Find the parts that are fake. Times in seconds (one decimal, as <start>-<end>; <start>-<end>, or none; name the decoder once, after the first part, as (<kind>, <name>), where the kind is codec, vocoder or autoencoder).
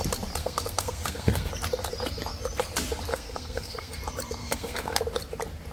0.4-1.5 (codec, SNAC); 3.1-4.0; 4.4-5.0